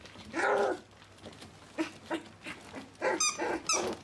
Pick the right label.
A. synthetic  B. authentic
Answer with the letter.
B